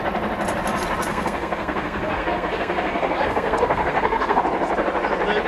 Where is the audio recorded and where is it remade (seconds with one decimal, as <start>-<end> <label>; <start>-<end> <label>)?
0.0-1.1 recorded; 1.1-4.4 remade; 4.4-5.5 recorded